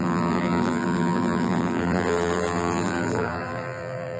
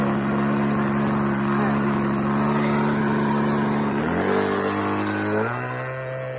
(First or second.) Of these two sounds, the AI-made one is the first